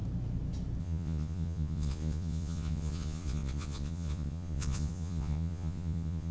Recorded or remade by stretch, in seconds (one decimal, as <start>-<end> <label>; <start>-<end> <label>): 0.0-0.8 recorded; 0.8-6.3 remade

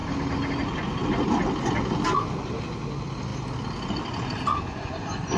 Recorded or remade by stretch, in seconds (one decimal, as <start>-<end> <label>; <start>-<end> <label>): 0.0-4.5 recorded; 4.5-5.4 remade

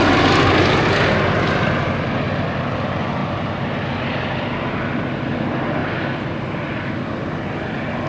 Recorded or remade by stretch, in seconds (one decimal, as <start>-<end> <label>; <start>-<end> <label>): 0.0-5.8 recorded; 5.8-6.9 remade; 6.9-8.1 recorded

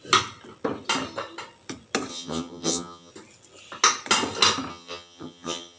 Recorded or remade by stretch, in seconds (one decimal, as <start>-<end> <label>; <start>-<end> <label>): 0.0-2.1 recorded; 2.1-3.1 remade; 3.1-4.7 recorded; 4.7-5.8 remade

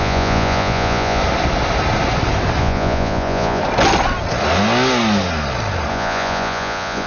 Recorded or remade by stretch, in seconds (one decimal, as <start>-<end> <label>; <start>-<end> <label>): 0.0-1.2 remade; 1.2-2.6 recorded; 2.6-3.6 remade; 3.6-5.9 recorded; 5.9-7.1 remade

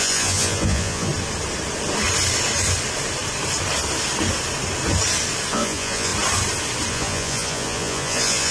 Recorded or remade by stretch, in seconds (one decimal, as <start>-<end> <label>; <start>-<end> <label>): 0.0-1.1 remade; 1.1-5.5 recorded; 5.5-6.1 remade; 6.1-6.9 recorded; 6.9-8.5 remade

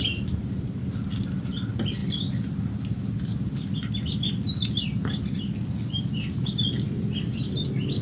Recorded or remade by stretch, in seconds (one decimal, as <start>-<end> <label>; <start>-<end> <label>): 0.0-8.0 recorded

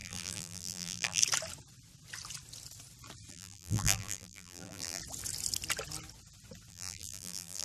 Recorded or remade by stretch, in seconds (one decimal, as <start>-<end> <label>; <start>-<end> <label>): 0.0-1.2 remade; 1.2-3.3 recorded; 3.3-5.0 remade; 5.0-6.7 recorded; 6.7-7.6 remade